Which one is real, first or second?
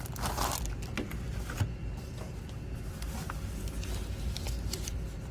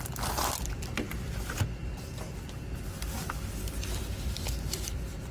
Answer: first